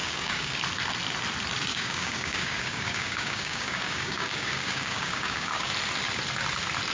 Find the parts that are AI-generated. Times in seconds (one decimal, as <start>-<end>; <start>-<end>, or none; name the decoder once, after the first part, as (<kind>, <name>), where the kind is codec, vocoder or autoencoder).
0.0-0.6 (codec, DAC); 1.7-5.7